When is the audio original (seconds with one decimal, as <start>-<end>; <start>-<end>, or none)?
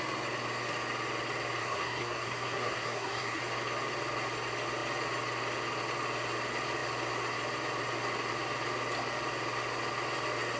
0.0-1.6; 3.4-10.6